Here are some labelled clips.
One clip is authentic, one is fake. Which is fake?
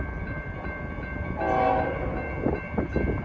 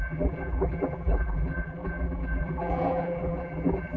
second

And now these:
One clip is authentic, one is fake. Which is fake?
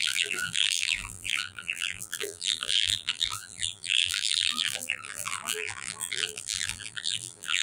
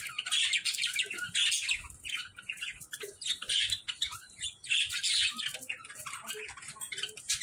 first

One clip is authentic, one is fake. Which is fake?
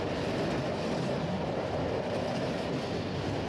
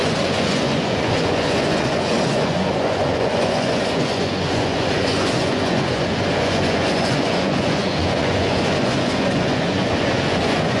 second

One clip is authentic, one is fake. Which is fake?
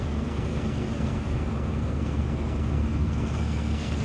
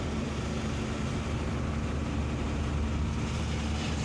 first